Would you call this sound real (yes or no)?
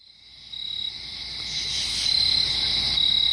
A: yes